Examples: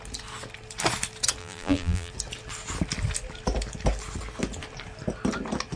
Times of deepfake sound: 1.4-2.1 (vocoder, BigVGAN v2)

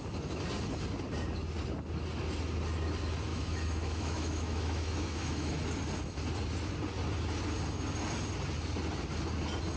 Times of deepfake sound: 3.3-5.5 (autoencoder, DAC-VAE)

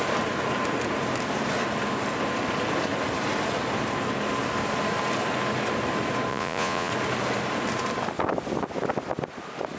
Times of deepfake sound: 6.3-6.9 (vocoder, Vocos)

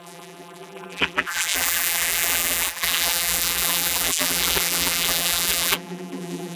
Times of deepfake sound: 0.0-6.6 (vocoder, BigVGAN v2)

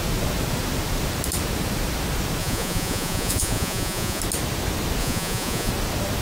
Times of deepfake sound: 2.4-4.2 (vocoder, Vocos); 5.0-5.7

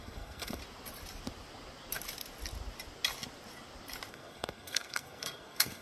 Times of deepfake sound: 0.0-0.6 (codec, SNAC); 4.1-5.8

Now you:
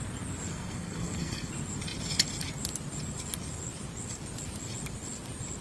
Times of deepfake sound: 0.5-1.5 (codec, SNAC)

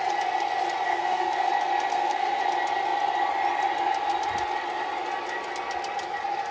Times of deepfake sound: 0.9-1.5 (codec, SNAC); 1.9-2.4